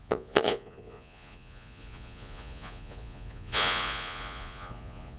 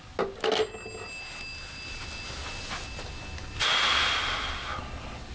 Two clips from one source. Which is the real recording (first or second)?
second